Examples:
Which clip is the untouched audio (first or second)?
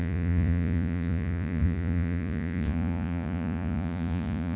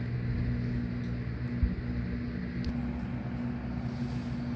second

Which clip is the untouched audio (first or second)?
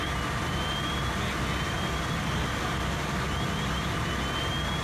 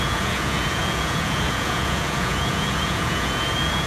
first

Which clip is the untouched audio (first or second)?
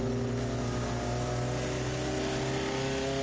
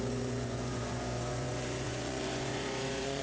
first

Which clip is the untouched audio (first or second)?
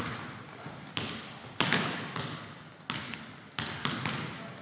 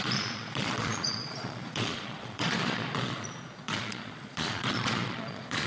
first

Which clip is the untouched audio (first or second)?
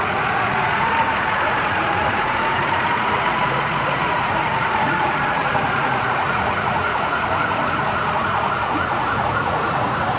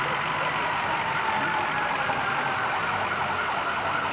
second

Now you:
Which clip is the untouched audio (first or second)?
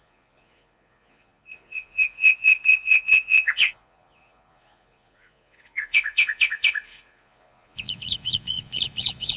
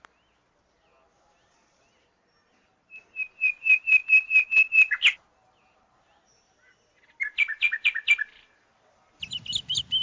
second